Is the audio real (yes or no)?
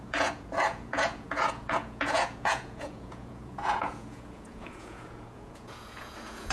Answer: no